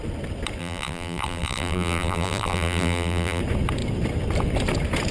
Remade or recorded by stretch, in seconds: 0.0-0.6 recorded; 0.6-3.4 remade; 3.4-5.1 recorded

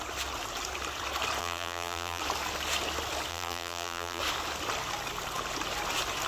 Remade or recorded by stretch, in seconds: 0.0-1.4 recorded; 1.4-2.2 remade; 2.2-3.3 recorded; 3.3-4.2 remade; 4.2-6.3 recorded